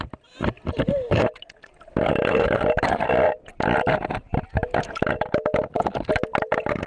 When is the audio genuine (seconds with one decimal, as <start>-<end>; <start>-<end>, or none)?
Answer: 0.0-6.9